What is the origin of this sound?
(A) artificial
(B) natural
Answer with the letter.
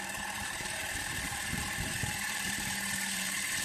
A